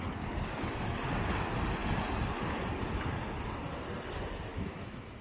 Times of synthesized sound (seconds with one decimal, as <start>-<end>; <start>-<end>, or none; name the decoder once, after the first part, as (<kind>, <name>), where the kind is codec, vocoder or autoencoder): 4.5-5.2 (autoencoder, DAC-VAE)